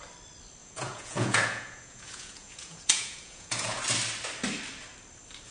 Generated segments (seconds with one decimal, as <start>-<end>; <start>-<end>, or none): 0.6-3.8